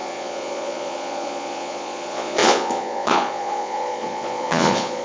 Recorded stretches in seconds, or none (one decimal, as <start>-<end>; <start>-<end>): none

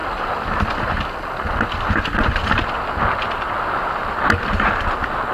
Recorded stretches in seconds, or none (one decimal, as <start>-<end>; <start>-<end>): 2.6-5.3

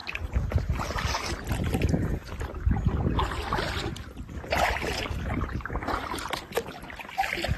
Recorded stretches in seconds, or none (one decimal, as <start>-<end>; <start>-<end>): 0.0-7.6